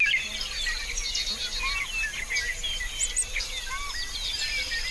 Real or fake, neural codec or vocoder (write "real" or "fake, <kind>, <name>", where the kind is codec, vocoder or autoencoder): real